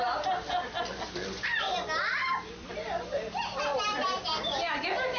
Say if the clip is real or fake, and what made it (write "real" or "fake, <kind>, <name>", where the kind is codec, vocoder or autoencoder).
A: real